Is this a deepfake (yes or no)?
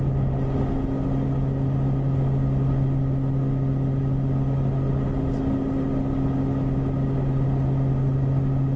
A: no